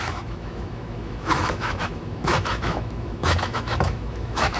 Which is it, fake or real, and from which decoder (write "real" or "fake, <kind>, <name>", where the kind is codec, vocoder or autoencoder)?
fake, autoencoder, DAC-VAE